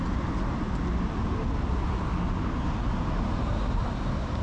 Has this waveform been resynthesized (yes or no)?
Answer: no